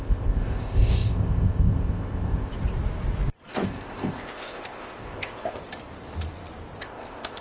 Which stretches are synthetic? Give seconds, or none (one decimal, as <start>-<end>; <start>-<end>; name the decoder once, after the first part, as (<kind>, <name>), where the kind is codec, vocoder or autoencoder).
0.0-2.5 (codec, ZipCodec); 3.5-5.6; 6.8-7.4